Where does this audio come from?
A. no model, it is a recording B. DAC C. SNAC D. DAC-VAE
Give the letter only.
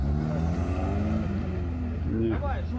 A